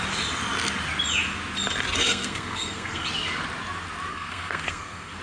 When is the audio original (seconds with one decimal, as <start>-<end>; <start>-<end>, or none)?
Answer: 0.0-2.0; 3.1-4.1